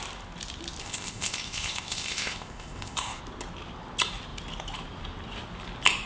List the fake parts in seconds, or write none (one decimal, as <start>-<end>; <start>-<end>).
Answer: 0.8-3.2